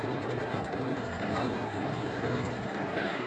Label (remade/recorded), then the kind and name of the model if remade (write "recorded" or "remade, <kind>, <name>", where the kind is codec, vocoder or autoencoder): remade, codec, SNAC